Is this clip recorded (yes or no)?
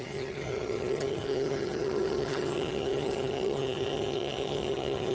no